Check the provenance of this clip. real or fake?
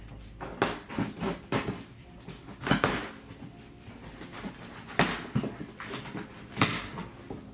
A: real